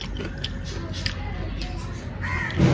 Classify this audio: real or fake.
real